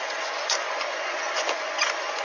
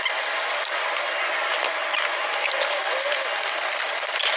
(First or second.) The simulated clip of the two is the first